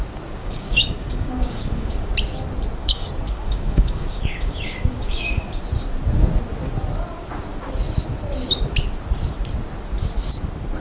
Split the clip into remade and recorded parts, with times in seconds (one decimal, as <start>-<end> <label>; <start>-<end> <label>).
0.0-0.4 recorded; 0.4-2.1 remade; 2.1-2.8 recorded; 2.8-5.6 remade; 5.6-10.8 recorded